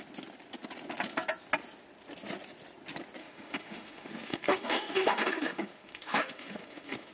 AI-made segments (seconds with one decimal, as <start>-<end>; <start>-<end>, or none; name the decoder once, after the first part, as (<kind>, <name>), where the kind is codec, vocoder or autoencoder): 3.2-7.1 (autoencoder, DAC-VAE)